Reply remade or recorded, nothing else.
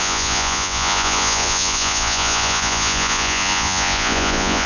remade